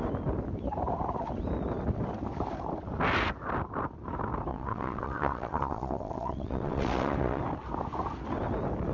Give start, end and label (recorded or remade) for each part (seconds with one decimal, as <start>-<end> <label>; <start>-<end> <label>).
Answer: 0.0-4.5 recorded; 4.5-7.4 remade; 7.4-8.9 recorded